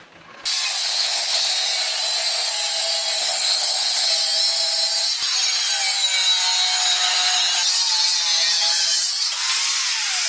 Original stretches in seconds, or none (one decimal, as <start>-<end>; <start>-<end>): 0.0-0.8; 1.5-3.2; 4.1-10.3